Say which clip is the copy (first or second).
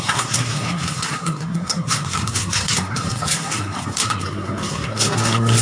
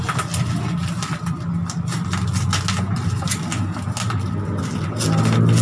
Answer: first